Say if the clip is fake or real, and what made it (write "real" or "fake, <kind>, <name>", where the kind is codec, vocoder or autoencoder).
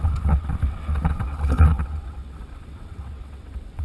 fake, vocoder, WaveNeXt